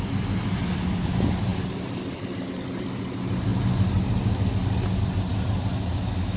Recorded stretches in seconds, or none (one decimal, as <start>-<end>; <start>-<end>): 0.0-6.4